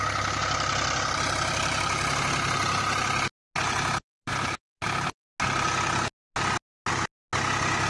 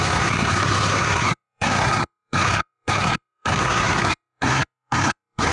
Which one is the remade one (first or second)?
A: second